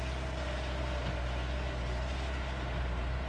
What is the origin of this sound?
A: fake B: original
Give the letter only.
B